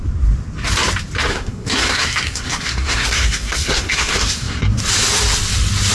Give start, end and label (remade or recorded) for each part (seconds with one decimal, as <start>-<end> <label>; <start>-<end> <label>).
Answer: 0.0-1.3 recorded; 1.3-4.8 remade; 4.8-5.9 recorded